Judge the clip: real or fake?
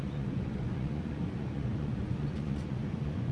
fake